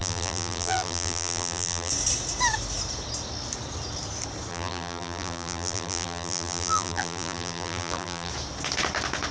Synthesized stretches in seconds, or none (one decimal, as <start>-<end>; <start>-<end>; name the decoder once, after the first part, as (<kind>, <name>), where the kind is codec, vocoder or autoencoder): 0.0-1.9 (vocoder, BigVGAN v2); 4.5-8.3